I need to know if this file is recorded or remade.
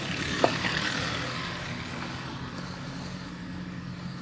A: remade